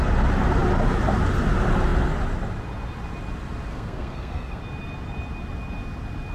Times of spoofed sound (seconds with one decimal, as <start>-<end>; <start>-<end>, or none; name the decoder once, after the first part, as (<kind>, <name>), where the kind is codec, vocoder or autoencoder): 3.7-4.6 (codec, SNAC)